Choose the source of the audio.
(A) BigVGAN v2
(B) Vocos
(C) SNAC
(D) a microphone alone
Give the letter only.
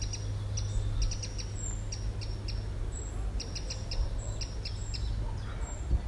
D